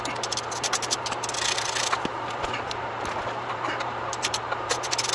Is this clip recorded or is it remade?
recorded